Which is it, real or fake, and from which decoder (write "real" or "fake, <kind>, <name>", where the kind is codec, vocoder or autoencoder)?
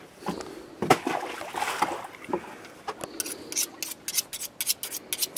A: real